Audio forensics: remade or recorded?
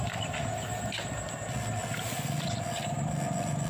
recorded